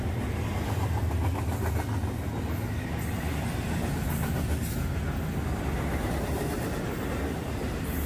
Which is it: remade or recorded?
recorded